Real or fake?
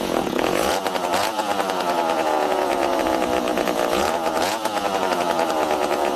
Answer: fake